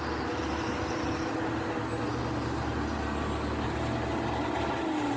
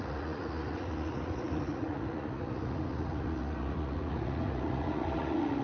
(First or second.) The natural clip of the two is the first